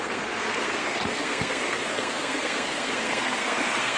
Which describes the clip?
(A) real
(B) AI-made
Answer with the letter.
B